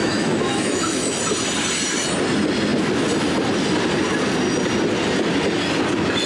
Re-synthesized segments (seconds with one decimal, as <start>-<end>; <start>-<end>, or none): 0.0-1.2